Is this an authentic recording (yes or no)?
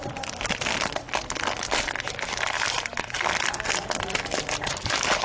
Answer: yes